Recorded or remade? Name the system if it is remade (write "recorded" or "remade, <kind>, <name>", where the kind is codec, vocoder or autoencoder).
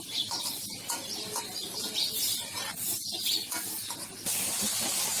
recorded